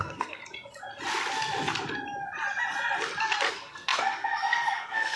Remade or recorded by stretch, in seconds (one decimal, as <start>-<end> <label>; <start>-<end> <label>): 0.0-0.4 remade; 0.4-3.5 recorded; 3.5-5.2 remade